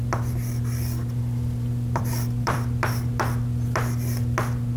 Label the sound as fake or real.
fake